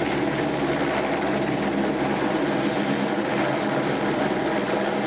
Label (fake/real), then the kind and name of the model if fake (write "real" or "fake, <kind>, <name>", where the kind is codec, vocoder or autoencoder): real